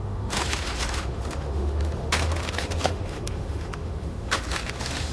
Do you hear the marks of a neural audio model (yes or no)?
yes